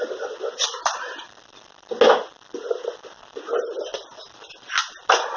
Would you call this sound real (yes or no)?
yes